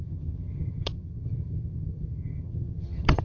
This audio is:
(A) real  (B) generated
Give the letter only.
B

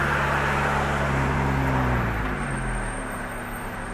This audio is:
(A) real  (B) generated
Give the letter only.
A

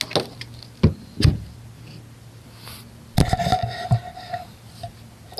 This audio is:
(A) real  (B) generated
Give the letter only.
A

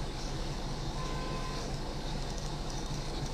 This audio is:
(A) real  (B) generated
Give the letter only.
B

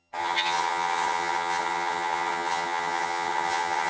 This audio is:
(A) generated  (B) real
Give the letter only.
A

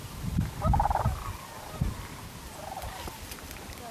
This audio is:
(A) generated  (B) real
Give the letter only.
A